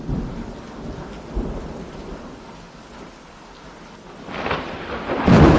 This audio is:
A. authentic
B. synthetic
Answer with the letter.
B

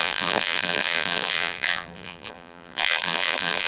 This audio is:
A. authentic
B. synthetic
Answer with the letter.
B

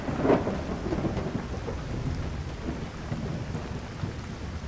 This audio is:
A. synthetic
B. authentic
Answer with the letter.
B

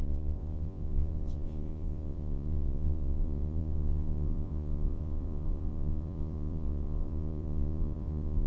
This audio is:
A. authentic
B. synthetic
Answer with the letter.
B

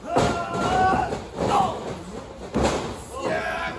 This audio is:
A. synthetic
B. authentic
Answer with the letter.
B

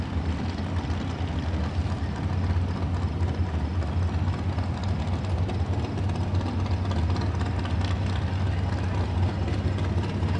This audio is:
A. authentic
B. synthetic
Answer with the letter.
A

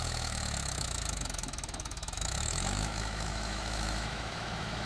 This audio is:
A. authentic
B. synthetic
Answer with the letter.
B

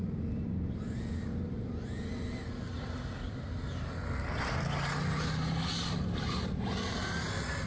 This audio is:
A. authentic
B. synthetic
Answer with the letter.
A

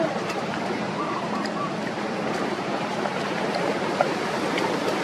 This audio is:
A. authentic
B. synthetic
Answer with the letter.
B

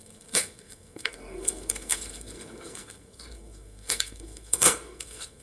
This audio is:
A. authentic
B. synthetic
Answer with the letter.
B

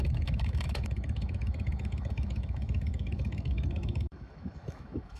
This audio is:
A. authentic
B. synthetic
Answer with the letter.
B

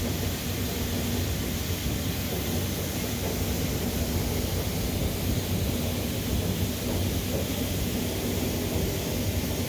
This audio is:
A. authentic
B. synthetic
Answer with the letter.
A